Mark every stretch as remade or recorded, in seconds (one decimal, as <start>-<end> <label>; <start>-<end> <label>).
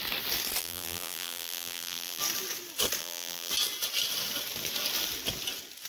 0.0-0.6 recorded; 0.6-2.2 remade; 2.2-3.0 recorded; 3.0-3.5 remade; 3.5-5.9 recorded